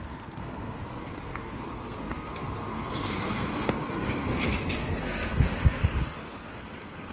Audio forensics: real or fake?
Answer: fake